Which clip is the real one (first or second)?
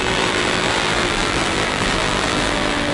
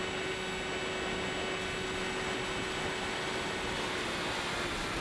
second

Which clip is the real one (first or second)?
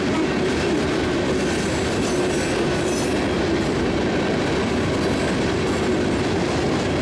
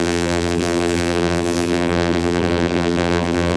first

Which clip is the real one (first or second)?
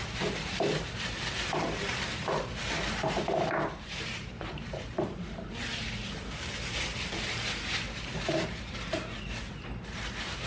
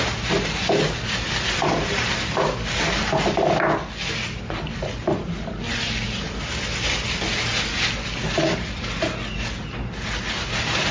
second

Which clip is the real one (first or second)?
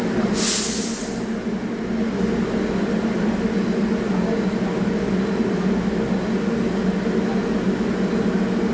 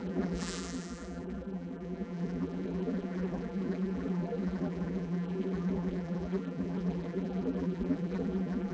first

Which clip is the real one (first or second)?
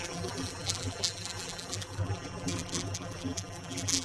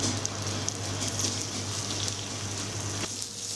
second